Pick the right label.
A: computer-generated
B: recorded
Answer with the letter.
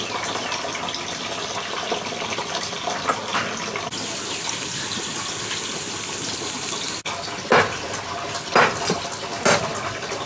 B